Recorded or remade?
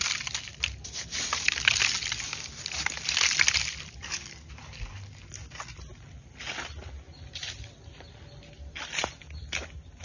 recorded